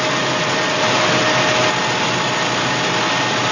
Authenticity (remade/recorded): recorded